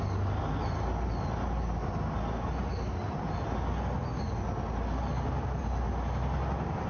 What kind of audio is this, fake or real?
real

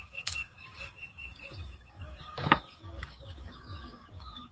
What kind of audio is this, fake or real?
fake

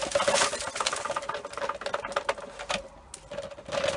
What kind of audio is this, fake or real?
real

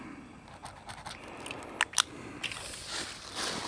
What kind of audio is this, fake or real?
real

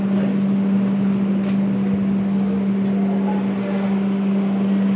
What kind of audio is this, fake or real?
real